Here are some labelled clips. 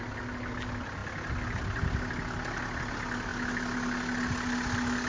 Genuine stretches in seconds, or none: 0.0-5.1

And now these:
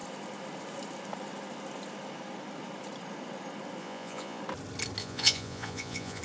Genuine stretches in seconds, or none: 0.0-3.8; 4.4-5.0

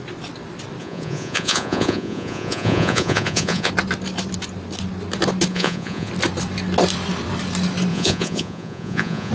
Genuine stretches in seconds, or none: 0.0-0.8; 3.7-5.5; 6.1-7.9

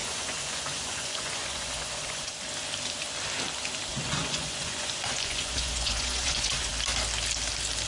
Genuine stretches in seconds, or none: 2.4-3.9; 6.7-7.9